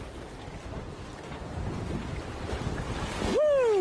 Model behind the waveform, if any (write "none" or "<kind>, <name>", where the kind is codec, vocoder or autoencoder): none